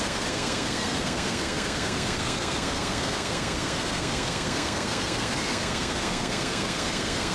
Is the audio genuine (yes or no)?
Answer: no